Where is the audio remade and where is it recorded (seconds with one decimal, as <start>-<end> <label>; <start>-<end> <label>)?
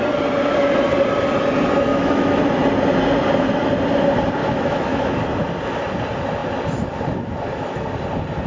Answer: 0.0-1.9 recorded; 1.9-2.4 remade; 2.4-4.4 recorded; 4.4-5.1 remade; 5.1-8.5 recorded